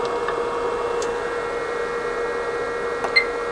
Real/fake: real